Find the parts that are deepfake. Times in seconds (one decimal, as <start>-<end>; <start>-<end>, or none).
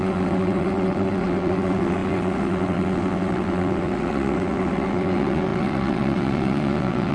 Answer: 0.0-7.1